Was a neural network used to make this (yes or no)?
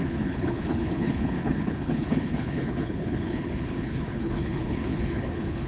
yes